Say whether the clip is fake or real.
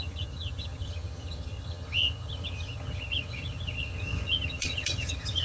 fake